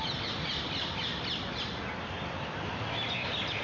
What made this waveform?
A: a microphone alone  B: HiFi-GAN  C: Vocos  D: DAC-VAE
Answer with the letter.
A